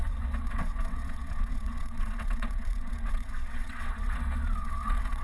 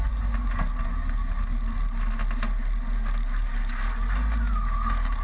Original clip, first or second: second